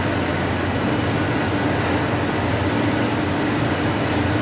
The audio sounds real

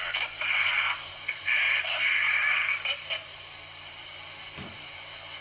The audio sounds real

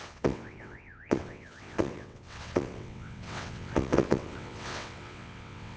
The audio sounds fake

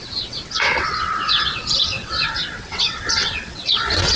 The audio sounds fake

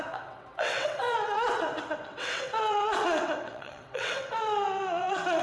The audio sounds fake